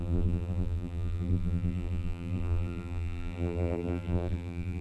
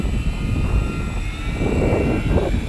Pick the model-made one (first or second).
first